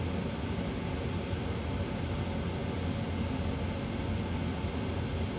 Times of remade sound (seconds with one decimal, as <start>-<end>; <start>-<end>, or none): none